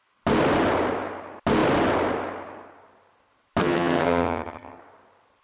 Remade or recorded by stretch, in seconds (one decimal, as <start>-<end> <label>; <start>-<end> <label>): 0.0-3.6 recorded; 3.6-4.8 remade; 4.8-5.4 recorded